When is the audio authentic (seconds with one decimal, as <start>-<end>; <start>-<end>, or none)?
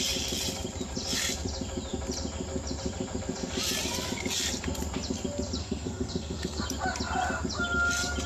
0.0-5.6; 6.6-8.3